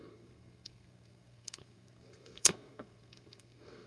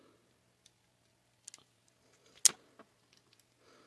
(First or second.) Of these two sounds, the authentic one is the second